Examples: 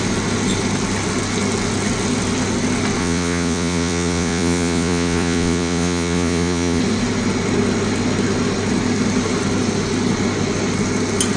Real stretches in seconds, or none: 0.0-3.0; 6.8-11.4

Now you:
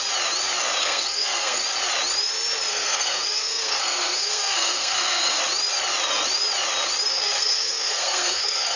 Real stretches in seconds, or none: 0.0-0.8; 1.6-2.7; 5.4-7.1

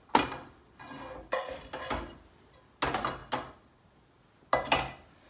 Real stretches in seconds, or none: 0.0-5.3

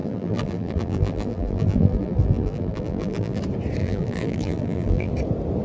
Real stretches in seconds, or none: 3.4-3.8; 5.1-5.6

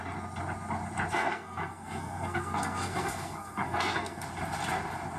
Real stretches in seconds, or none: 0.0-1.1; 4.2-5.2